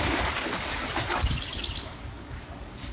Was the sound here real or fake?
fake